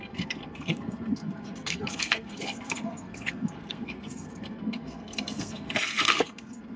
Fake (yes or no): yes